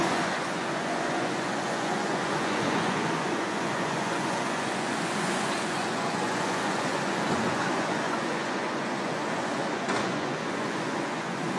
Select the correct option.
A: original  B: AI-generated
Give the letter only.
B